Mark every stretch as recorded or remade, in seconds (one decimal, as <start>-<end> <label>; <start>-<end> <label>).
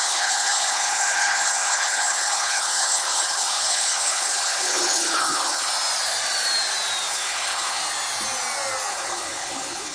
0.0-5.7 remade; 5.7-7.1 recorded; 7.1-7.8 remade; 7.8-8.9 recorded; 8.9-9.9 remade